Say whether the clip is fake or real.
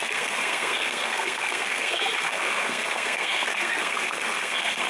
fake